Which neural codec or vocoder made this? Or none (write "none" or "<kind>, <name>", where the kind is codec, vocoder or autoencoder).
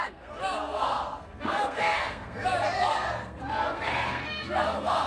codec, SNAC